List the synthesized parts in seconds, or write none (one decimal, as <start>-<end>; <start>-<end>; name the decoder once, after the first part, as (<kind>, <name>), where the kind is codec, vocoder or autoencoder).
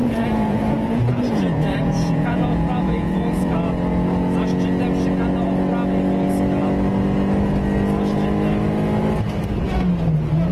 0.0-3.5 (vocoder, Vocos)